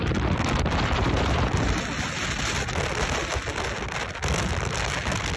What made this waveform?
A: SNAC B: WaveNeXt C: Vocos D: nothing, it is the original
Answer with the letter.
D